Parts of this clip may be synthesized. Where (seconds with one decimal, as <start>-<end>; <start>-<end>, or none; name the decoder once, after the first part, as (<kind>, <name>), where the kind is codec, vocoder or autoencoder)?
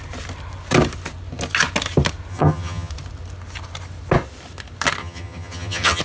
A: 2.3-2.9 (vocoder, HiFi-GAN); 5.0-6.0